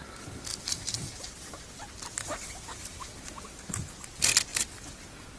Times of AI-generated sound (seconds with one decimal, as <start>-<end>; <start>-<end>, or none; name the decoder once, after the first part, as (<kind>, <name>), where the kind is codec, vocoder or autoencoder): 0.5-3.7 (vocoder, BigVGAN v2); 4.5-5.0